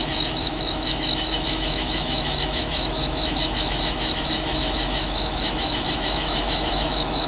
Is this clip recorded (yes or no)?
no